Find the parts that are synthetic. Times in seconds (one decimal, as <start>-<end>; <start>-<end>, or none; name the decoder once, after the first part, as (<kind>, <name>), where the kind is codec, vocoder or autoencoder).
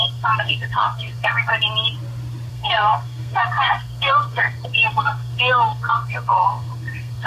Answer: 0.0-1.5 (codec, SNAC); 2.5-7.3